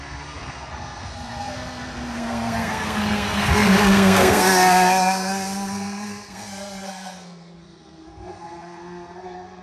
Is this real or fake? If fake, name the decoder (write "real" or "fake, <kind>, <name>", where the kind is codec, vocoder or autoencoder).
fake, codec, SNAC